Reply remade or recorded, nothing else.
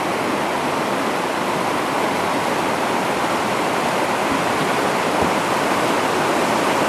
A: recorded